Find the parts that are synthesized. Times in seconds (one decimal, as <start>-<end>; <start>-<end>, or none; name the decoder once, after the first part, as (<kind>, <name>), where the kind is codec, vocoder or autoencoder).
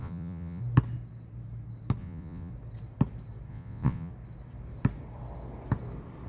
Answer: 0.0-0.6 (vocoder, Vocos); 2.0-2.5; 3.5-4.1